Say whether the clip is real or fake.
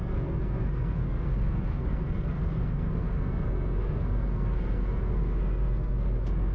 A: fake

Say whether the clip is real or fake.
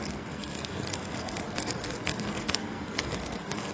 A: fake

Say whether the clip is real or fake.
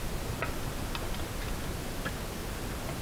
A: real